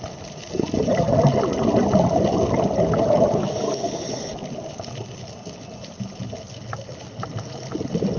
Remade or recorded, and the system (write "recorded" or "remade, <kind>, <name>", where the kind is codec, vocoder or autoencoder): recorded